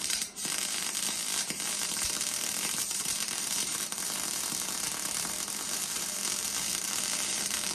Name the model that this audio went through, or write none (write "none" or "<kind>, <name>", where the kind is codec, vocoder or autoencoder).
vocoder, BigVGAN v2